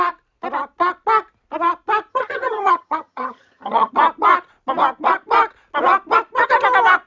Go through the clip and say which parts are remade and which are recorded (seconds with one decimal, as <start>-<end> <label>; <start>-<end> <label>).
0.0-2.1 recorded; 2.1-3.9 remade; 3.9-7.1 recorded